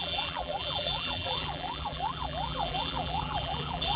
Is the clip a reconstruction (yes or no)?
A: yes